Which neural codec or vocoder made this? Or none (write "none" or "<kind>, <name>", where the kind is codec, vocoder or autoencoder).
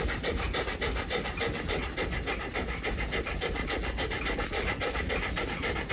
none